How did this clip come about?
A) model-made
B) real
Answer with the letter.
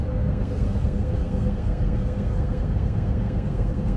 A